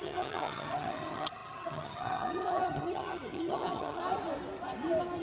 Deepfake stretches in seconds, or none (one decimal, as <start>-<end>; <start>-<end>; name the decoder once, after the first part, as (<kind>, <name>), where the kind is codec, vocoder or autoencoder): 0.0-4.0 (vocoder, HiFi-GAN)